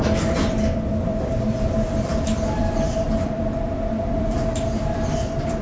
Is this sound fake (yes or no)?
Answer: yes